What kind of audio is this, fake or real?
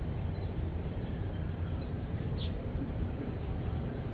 fake